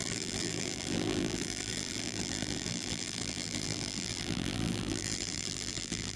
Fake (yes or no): yes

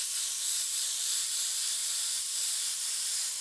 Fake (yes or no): yes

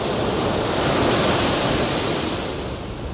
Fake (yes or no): no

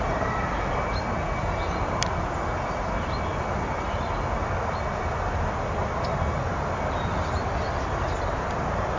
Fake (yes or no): no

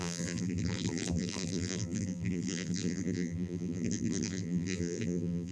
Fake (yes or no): yes